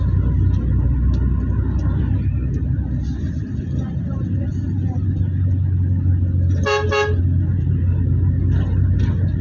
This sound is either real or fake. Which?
real